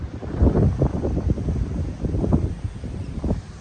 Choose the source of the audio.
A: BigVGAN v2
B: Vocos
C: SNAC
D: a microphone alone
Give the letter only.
A